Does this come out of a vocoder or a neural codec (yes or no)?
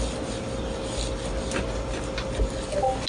no